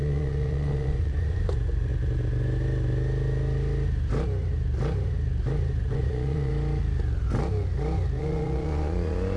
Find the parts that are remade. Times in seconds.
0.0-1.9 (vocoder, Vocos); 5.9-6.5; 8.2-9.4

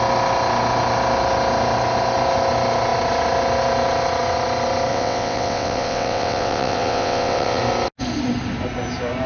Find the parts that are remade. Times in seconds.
4.9-7.6 (vocoder, WaveNeXt)

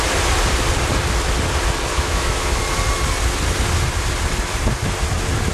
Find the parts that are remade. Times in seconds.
1.9-2.6 (autoencoder, DAC-VAE)

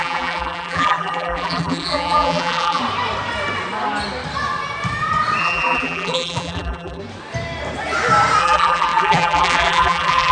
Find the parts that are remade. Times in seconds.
0.0-2.8 (vocoder, BigVGAN v2); 5.4-7.0; 8.4-10.3

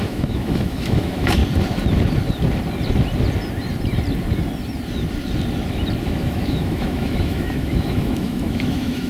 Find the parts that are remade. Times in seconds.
0.0-1.4 (autoencoder, DAC-VAE); 6.0-9.1